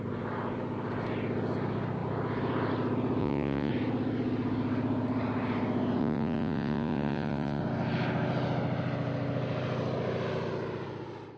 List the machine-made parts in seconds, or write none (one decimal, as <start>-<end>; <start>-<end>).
3.2-3.7; 6.0-7.6

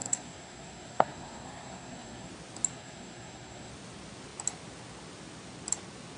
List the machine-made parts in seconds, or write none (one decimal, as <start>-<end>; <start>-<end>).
0.0-2.3; 2.7-3.7

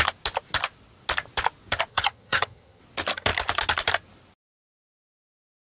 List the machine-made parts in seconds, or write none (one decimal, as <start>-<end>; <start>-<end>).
1.9-2.8

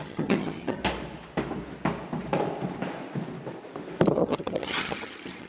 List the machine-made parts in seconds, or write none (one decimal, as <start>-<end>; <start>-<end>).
0.0-0.8; 4.1-5.5